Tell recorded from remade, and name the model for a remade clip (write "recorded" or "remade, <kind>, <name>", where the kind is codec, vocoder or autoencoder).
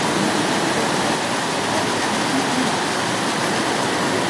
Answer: recorded